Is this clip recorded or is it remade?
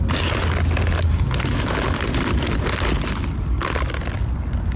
recorded